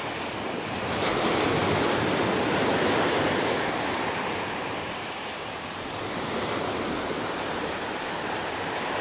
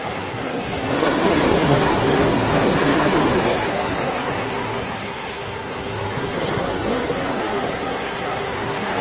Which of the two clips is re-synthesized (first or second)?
second